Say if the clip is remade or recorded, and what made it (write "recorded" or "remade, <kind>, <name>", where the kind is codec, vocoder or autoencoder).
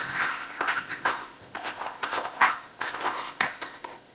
remade, codec, ZipCodec